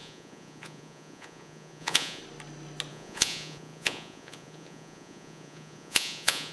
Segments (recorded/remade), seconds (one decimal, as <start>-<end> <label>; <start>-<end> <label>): 0.0-2.2 remade; 2.2-2.9 recorded; 2.9-6.5 remade